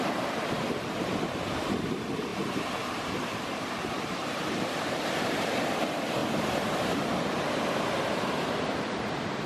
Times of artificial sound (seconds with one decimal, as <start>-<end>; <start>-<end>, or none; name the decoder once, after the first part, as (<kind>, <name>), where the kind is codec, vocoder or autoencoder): 0.0-9.5 (vocoder, BigVGAN v2)